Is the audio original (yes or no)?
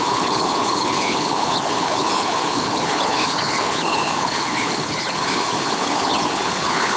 no